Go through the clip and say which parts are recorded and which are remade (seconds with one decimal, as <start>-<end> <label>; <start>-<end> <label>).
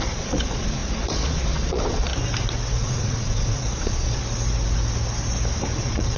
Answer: 0.0-2.1 remade; 2.1-2.7 recorded; 2.7-4.2 remade; 4.2-5.7 recorded; 5.7-6.2 remade